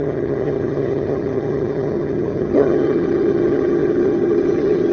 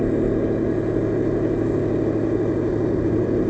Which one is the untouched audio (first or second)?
second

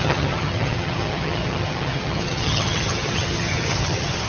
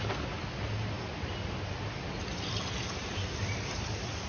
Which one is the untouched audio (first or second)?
second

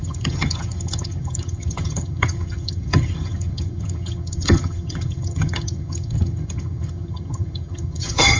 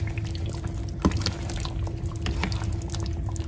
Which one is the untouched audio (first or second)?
second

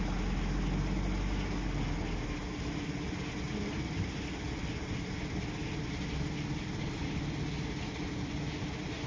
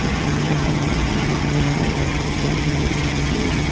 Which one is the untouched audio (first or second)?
first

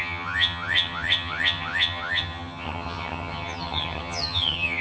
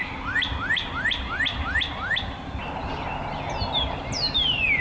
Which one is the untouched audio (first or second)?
second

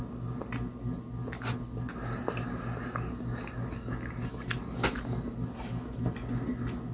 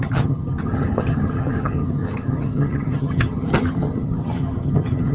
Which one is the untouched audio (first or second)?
first